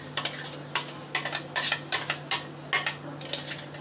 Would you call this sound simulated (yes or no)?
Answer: no